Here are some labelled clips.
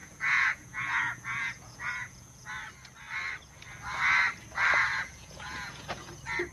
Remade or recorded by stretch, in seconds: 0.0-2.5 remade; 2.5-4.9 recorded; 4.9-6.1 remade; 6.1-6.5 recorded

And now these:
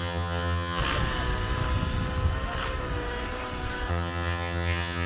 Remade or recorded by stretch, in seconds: 0.0-0.8 remade; 0.8-3.9 recorded; 3.9-5.1 remade

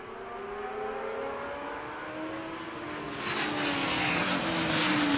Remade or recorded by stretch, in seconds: 0.0-5.2 recorded

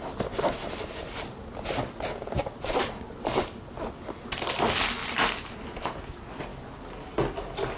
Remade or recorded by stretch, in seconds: 0.0-7.8 recorded